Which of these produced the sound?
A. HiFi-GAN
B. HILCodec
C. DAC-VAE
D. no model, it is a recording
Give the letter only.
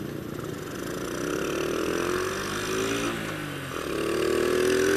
D